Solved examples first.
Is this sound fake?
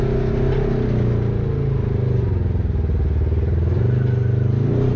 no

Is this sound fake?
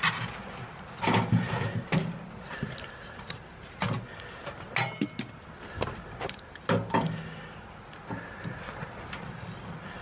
no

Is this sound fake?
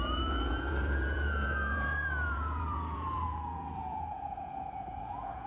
yes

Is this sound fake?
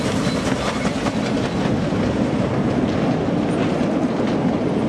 no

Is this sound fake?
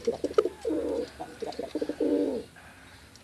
no